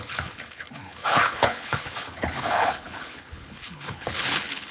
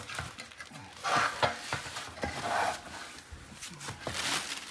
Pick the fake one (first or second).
first